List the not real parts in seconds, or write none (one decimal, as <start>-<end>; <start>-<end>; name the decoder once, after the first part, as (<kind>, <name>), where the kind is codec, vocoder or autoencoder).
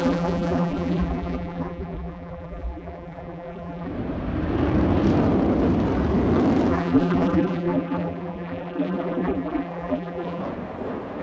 0.0-3.9 (vocoder, BigVGAN v2); 6.7-10.4